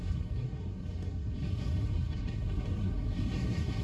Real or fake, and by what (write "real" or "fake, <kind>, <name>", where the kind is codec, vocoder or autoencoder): fake, codec, SNAC